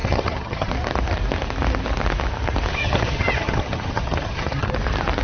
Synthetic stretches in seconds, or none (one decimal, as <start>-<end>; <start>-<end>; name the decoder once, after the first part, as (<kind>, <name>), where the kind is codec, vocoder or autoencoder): 0.0-0.7 (vocoder, HiFi-GAN); 2.7-4.7